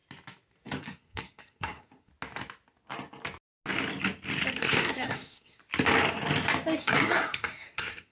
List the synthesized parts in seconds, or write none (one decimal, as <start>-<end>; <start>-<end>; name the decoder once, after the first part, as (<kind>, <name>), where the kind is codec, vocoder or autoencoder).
0.8-2.1 (codec, SNAC); 4.5-5.6; 6.8-8.1